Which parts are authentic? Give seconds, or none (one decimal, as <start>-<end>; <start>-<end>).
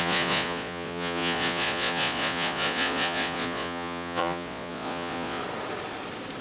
5.4-6.4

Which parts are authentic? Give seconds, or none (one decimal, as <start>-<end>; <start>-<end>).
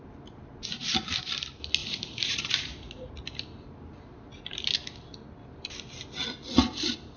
0.0-1.8; 3.1-7.2